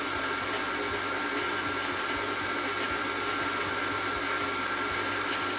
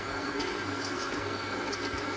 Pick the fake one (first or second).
second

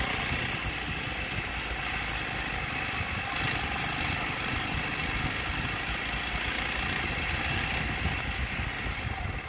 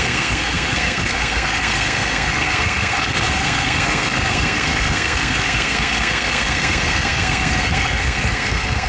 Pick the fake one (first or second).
second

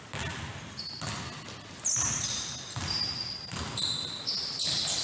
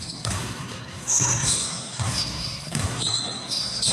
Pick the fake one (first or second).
second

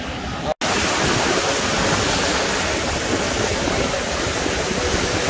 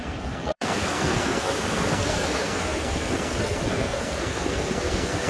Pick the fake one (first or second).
second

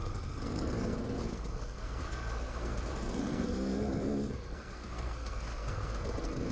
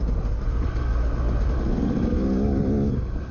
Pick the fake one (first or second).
first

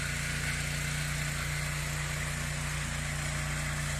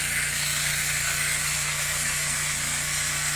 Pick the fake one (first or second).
second